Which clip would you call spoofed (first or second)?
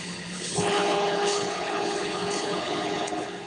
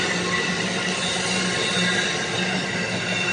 first